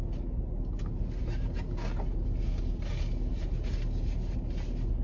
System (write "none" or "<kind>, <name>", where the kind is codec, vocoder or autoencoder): none